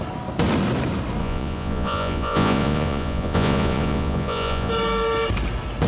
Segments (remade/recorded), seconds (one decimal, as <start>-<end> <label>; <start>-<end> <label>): 0.0-1.2 recorded; 1.2-4.7 remade; 4.7-5.9 recorded